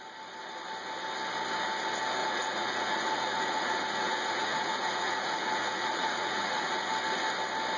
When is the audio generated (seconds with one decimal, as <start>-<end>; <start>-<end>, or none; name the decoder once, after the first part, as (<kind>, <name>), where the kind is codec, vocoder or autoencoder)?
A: 2.2-6.9 (vocoder, Vocos)